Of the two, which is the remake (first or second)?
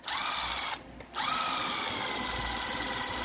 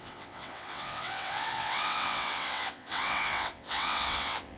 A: second